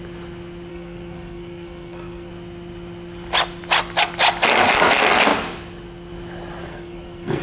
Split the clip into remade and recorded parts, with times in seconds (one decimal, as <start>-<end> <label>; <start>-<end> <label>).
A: 0.0-0.7 recorded; 0.7-2.3 remade; 2.3-6.7 recorded; 6.7-7.4 remade